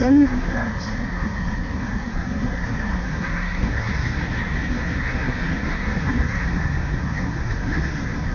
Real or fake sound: fake